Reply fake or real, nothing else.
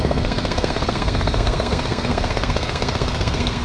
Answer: fake